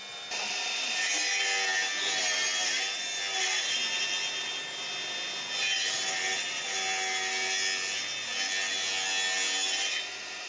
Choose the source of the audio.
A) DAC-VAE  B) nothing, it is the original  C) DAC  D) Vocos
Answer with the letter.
B